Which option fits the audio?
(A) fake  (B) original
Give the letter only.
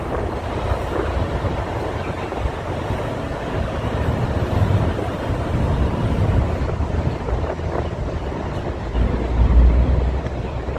A